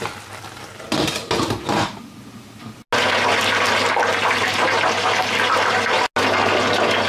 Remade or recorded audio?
recorded